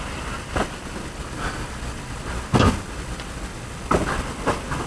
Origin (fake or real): real